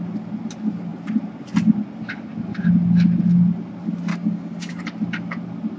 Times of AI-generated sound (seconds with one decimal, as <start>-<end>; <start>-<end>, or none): 4.1-4.8